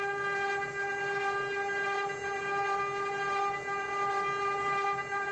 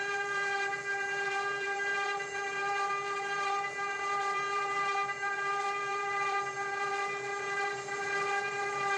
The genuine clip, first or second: first